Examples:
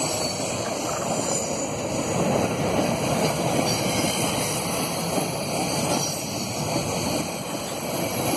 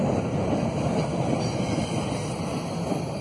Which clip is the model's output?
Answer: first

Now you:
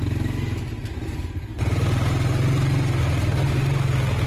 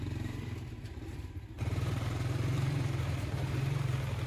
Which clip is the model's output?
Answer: second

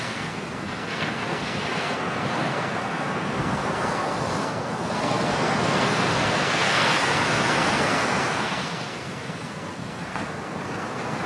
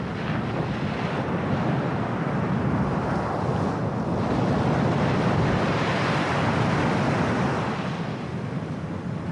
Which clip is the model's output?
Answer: first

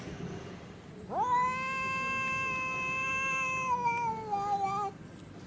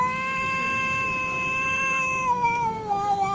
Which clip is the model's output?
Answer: second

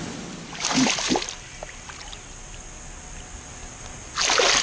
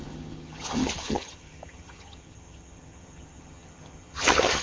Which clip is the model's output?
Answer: second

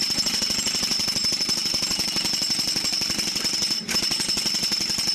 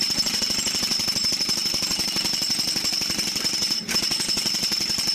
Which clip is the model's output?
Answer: second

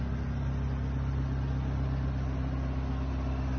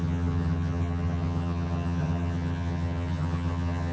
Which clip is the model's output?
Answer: second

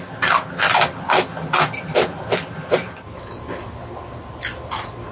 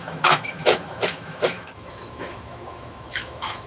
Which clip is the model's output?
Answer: second